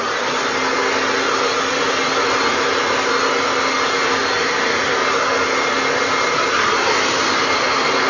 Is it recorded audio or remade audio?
recorded